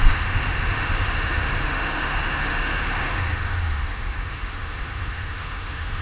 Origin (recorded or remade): remade